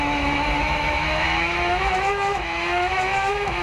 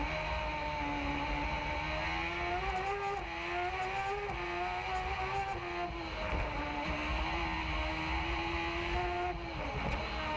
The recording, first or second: second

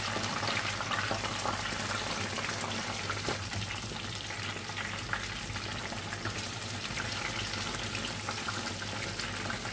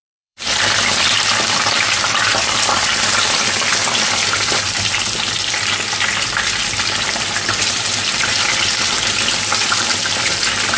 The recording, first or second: first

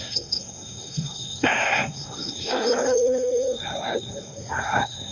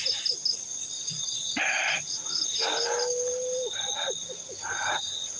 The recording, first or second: second